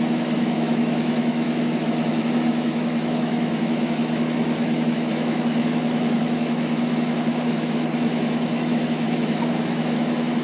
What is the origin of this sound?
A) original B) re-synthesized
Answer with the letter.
B